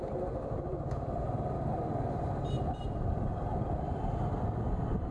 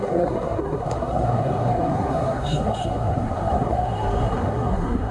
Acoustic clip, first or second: first